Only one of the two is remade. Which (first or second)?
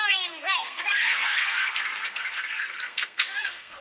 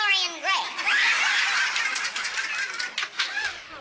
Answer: first